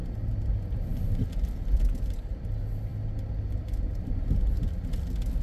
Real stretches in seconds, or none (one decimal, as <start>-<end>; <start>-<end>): 0.0-5.4